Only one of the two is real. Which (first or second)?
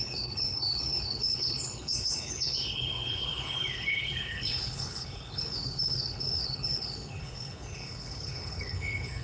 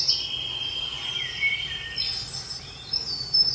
second